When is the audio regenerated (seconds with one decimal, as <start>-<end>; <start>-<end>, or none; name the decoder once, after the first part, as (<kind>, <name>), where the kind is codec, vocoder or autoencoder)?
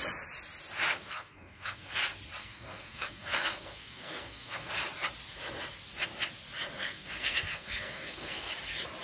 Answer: 0.9-2.0 (codec, SNAC); 2.4-4.7; 6.8-8.5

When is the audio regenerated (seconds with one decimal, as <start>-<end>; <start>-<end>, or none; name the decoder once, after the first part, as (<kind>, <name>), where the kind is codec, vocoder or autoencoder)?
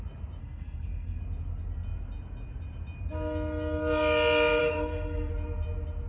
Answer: 0.4-1.2 (codec, SNAC); 4.6-5.3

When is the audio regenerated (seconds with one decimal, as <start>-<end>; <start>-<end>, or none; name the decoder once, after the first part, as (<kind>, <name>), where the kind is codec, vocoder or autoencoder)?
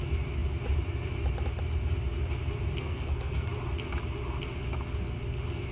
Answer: 2.8-3.5 (codec, SNAC)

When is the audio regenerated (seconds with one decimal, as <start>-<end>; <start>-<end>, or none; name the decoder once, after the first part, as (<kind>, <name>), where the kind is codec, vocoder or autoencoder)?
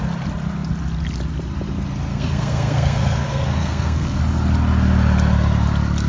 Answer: 2.1-4.2 (codec, SNAC)